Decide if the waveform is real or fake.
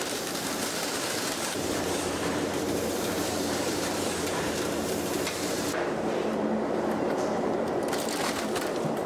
fake